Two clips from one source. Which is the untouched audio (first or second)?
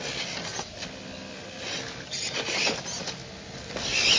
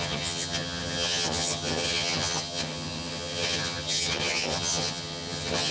first